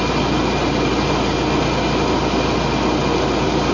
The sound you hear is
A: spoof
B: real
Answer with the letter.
B